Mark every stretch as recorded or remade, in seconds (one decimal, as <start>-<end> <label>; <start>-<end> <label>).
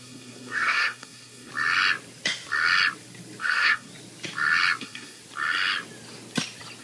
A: 0.0-1.5 remade; 1.5-3.4 recorded; 3.4-3.9 remade; 3.9-4.8 recorded; 4.8-5.2 remade; 5.2-6.8 recorded